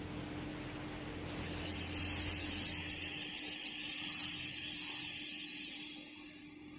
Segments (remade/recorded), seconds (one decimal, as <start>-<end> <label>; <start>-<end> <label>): 0.0-6.8 recorded